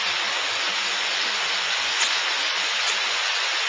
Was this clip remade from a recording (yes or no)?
yes